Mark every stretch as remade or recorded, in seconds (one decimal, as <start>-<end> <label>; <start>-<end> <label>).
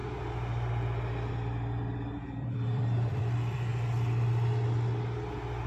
0.0-1.3 recorded; 1.3-3.7 remade; 3.7-5.7 recorded